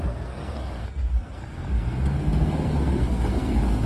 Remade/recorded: remade